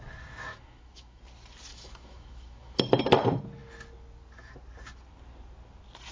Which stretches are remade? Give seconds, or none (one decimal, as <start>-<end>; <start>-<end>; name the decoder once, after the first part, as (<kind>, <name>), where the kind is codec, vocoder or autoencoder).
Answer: 0.5-1.2 (autoencoder, DAC-VAE); 1.7-2.8